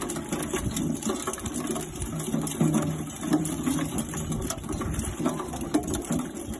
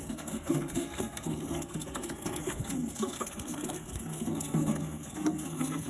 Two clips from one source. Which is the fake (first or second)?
second